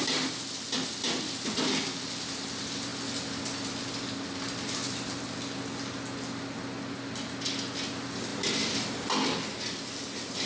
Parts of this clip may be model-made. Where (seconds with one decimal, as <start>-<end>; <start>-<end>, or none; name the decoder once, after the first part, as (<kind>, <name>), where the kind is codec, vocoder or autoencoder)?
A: none